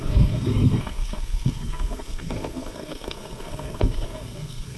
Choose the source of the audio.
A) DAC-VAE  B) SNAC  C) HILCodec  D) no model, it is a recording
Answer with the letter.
B